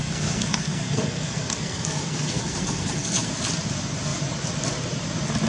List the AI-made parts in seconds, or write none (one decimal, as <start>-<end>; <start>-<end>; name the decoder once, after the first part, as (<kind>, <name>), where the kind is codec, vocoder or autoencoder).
0.0-3.3 (codec, SNAC)